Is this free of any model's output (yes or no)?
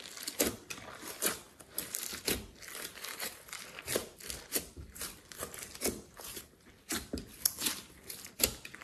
no